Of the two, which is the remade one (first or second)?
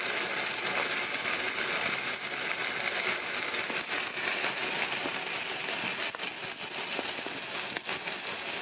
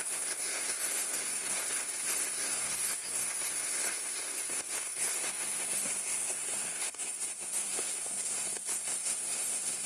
second